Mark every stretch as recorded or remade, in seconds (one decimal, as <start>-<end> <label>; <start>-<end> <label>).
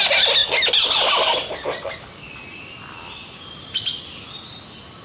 0.0-5.0 recorded